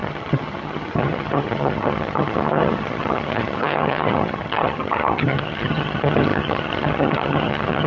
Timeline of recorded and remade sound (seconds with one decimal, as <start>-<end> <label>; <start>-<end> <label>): 0.0-7.9 remade